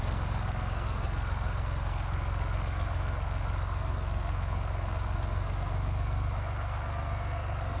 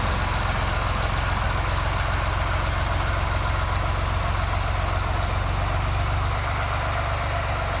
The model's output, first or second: first